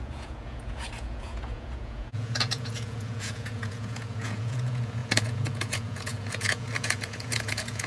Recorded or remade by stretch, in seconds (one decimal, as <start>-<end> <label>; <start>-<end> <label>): 0.0-7.9 remade